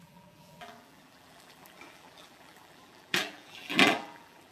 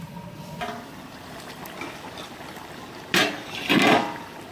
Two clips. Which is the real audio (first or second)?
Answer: second